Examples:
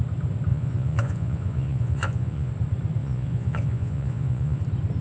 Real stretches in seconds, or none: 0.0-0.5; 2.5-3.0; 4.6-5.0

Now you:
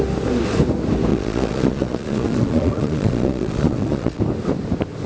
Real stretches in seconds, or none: 0.0-1.1; 4.2-5.1

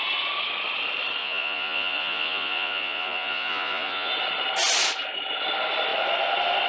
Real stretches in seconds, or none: 0.0-1.2; 4.1-6.7